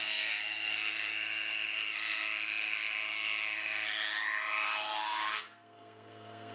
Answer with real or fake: fake